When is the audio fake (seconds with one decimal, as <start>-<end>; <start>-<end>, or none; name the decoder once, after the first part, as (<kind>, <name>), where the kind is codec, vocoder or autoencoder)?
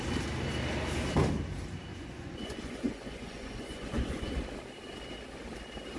1.9-4.3 (vocoder, Vocos)